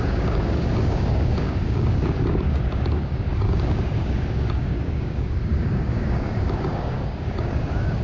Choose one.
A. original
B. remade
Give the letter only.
B